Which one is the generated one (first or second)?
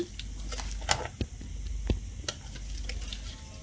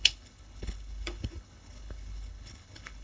second